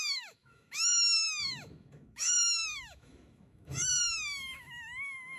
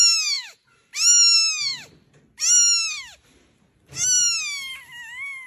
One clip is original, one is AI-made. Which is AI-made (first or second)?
first